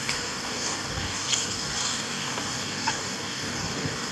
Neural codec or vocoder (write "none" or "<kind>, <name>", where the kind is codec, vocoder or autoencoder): codec, DAC